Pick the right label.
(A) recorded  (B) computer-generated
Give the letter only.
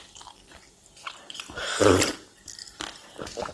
A